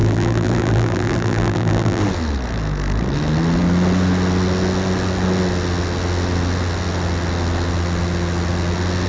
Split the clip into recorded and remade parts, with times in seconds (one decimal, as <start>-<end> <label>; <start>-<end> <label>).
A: 0.0-2.0 remade; 2.0-9.1 recorded